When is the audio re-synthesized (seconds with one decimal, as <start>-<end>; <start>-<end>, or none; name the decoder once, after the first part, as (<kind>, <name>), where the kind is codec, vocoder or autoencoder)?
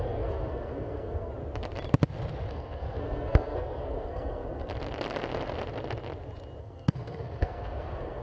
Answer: 0.0-1.3 (codec, SNAC); 2.5-4.7; 6.6-8.2